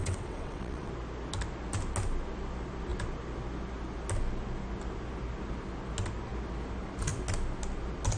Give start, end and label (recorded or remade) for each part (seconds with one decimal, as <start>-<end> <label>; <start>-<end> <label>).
0.0-0.9 remade; 0.9-8.2 recorded